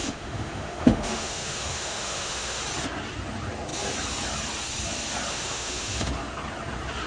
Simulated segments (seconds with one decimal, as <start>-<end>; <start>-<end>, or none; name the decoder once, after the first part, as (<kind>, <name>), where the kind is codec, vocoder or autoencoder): 0.0-2.6 (autoencoder, DAC-VAE); 5.3-6.1